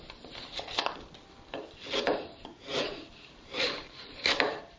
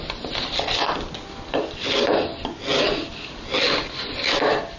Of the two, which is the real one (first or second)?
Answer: second